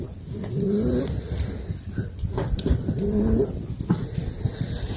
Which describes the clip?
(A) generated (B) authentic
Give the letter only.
B